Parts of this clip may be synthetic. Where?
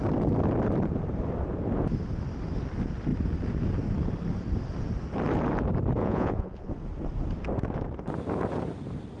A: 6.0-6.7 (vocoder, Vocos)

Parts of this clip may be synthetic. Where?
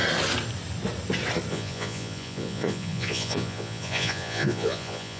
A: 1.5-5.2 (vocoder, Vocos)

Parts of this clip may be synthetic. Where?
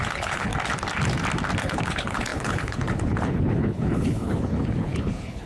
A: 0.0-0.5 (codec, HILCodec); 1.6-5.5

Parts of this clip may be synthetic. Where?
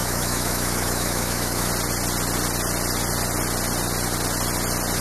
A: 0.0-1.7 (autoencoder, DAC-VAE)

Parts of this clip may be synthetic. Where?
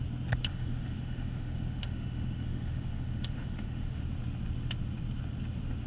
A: 0.5-4.0 (autoencoder, DAC-VAE)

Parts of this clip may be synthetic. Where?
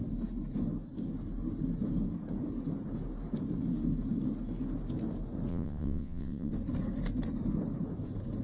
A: 5.5-6.5 (vocoder, WaveNeXt)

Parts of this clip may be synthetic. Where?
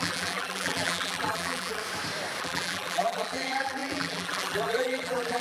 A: 0.0-1.8 (vocoder, BigVGAN v2); 2.4-5.4